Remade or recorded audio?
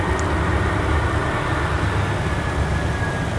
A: recorded